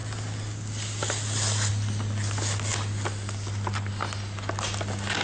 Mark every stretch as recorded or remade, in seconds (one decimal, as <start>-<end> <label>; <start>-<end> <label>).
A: 0.0-5.2 recorded